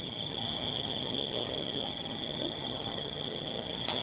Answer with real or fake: fake